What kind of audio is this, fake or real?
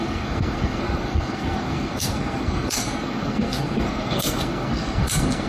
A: fake